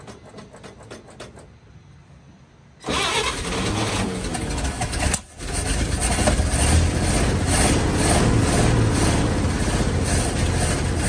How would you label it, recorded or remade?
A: recorded